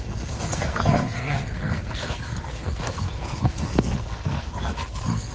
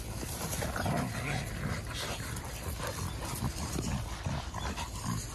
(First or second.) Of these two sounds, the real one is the second